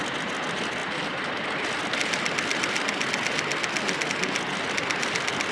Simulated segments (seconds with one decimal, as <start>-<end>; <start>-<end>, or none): none